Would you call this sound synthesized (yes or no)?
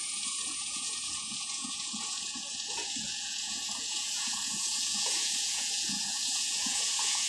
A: yes